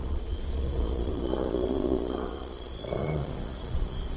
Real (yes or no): no